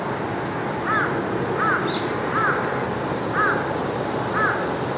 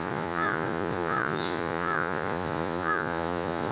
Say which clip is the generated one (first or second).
second